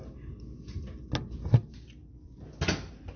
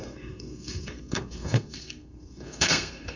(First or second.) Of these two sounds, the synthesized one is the second